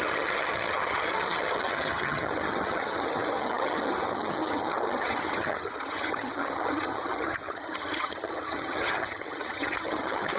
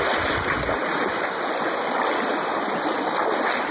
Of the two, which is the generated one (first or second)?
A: first